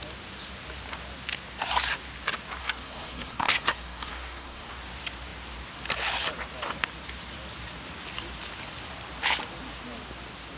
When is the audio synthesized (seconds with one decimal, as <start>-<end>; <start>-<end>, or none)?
2.6-4.7